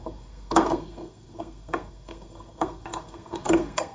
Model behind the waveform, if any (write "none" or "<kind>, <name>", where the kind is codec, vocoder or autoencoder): codec, SNAC